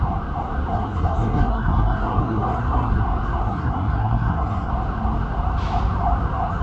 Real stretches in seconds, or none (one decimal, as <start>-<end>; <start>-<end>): 0.0-0.7; 2.9-3.4; 4.7-6.6